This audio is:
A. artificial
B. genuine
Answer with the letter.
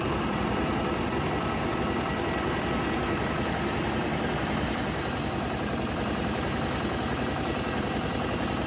B